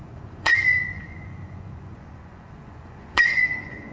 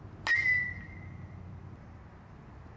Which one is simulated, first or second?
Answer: first